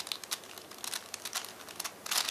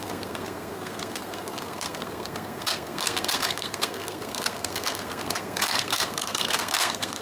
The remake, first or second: second